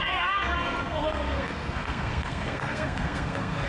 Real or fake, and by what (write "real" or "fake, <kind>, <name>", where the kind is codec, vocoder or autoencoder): fake, codec, SNAC